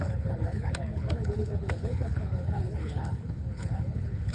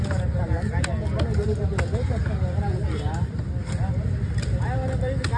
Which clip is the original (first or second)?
second